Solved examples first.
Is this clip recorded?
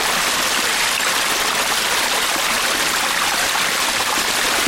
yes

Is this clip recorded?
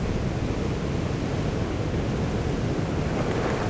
yes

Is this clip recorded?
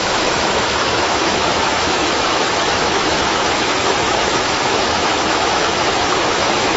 no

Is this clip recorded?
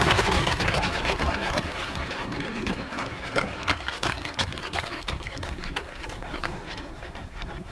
no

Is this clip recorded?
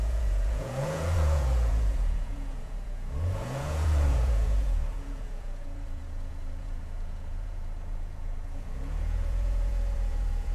no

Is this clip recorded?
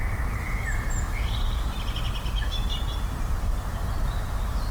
yes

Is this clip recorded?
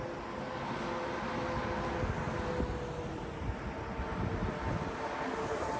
yes